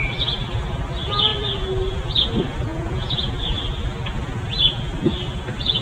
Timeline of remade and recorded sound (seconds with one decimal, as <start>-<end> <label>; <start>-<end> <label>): 0.0-2.7 recorded; 2.7-3.3 remade; 3.3-5.8 recorded